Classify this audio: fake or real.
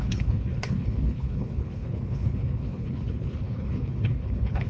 fake